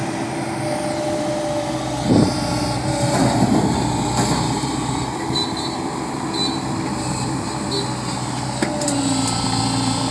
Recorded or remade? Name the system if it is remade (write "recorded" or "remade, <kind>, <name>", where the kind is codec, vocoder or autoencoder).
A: recorded